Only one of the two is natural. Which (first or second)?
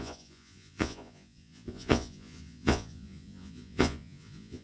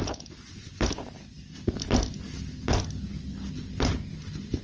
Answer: second